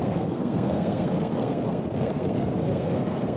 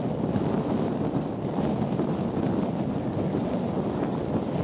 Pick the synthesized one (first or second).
first